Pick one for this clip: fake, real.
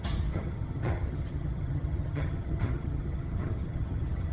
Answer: fake